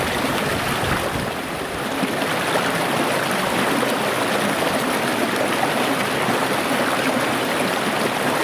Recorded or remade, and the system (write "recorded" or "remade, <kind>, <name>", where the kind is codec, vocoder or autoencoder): recorded